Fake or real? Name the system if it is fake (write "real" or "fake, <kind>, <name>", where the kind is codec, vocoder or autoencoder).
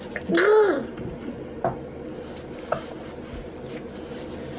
real